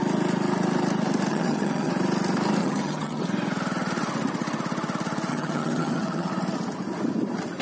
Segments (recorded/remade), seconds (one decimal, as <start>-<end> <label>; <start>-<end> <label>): 0.0-1.3 recorded; 1.3-1.9 remade; 1.9-2.6 recorded; 2.6-3.2 remade; 3.2-5.3 recorded; 5.3-6.3 remade; 6.3-7.6 recorded